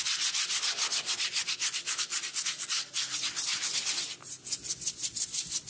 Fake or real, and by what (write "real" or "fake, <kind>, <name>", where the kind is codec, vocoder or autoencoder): real